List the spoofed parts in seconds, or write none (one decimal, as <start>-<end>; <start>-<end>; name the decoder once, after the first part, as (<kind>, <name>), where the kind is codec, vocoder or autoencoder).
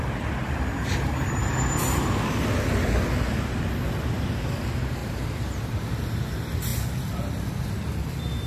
5.0-5.8 (vocoder, BigVGAN v2)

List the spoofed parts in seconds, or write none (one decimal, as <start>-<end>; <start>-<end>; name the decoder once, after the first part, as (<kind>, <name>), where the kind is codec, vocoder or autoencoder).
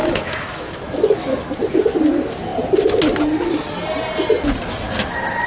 0.0-1.5 (autoencoder, DAC-VAE)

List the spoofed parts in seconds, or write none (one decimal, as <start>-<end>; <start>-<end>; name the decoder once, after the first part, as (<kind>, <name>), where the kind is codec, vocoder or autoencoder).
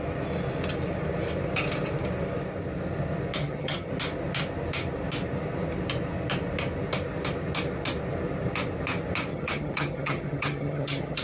3.4-3.9 (vocoder, HiFi-GAN); 9.3-11.2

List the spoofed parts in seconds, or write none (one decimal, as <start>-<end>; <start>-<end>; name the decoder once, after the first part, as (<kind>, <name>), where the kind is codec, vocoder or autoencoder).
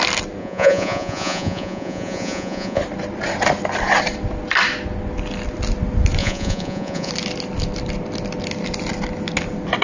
0.4-2.8 (vocoder, Vocos); 6.2-7.1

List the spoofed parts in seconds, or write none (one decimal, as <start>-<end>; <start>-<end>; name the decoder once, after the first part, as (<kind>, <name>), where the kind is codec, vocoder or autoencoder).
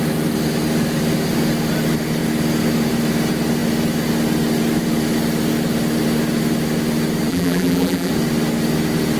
7.3-8.1 (vocoder, BigVGAN v2)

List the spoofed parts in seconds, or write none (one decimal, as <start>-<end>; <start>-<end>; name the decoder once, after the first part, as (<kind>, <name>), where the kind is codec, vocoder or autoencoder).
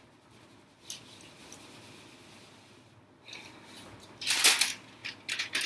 none